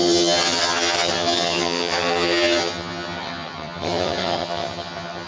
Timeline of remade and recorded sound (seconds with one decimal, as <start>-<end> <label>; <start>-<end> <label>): 0.0-5.3 remade